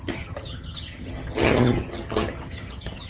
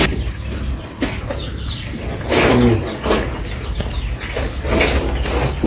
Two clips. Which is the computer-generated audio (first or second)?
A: first